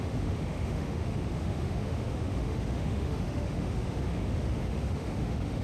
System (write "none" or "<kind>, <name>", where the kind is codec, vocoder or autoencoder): autoencoder, DAC-VAE